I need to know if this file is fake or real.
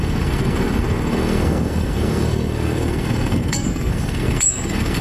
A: fake